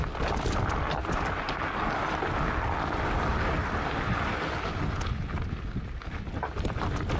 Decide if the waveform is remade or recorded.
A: recorded